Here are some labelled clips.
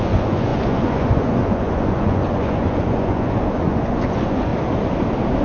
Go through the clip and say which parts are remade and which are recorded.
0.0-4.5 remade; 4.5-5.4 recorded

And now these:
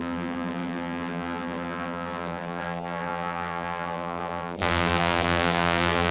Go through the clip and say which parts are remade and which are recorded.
0.0-6.1 remade